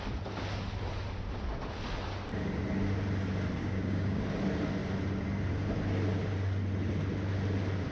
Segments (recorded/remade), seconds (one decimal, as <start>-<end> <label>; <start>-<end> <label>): 0.0-3.6 recorded; 3.6-4.2 remade; 4.2-7.9 recorded